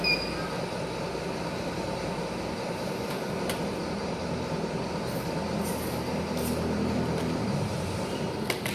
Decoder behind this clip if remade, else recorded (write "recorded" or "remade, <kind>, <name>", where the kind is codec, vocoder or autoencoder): recorded